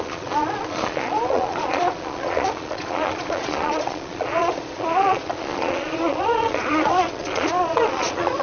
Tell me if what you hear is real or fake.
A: fake